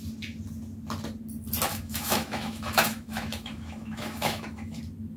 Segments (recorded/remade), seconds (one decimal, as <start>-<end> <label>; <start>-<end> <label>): 0.0-1.7 recorded; 1.7-4.8 remade; 4.8-5.2 recorded